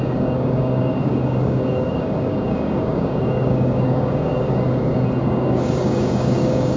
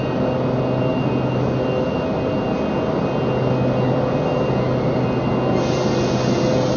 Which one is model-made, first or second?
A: first